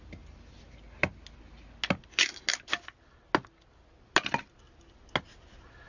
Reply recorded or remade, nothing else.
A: recorded